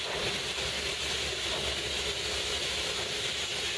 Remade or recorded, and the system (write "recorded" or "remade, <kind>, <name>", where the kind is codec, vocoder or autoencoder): recorded